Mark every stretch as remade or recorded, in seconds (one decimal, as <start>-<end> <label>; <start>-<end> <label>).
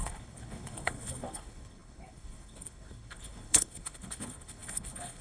0.0-5.2 remade